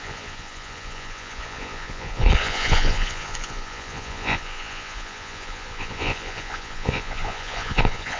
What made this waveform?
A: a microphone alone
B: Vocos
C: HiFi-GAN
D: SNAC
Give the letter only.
B